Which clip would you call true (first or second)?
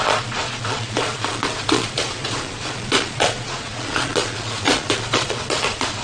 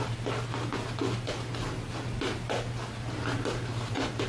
second